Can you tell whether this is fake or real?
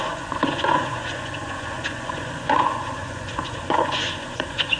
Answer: fake